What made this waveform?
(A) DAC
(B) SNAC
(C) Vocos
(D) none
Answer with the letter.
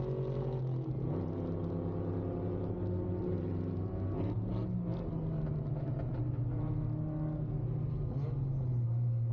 D